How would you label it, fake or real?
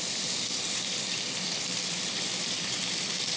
fake